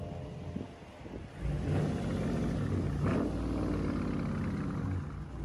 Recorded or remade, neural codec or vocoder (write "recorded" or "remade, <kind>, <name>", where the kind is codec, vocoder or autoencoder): recorded